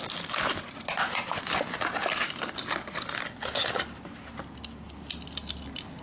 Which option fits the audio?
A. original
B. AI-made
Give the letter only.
A